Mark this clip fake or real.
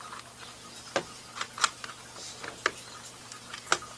real